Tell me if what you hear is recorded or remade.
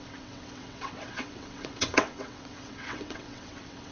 remade